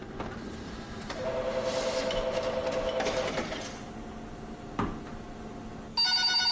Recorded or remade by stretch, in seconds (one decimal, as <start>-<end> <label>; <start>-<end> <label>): 0.0-1.5 remade; 1.5-6.5 recorded